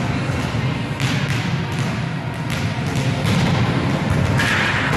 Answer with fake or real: real